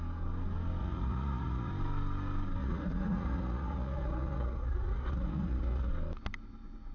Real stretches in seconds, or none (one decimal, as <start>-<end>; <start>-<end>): 0.0-0.8; 1.7-2.6; 5.9-6.9